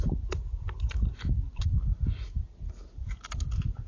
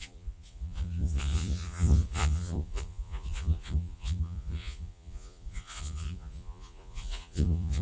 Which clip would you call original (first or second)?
first